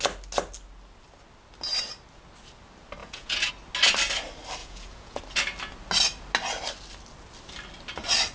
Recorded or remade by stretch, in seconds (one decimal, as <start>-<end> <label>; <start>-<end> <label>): 0.0-3.0 recorded; 3.0-3.5 remade; 3.5-4.6 recorded; 4.6-5.2 remade; 5.2-8.3 recorded